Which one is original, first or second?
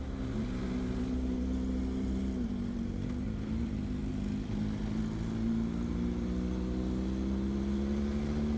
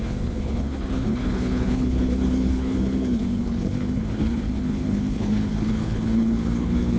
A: first